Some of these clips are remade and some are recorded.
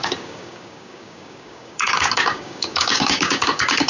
remade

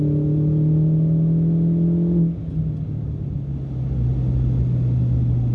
recorded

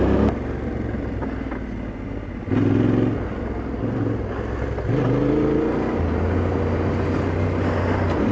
recorded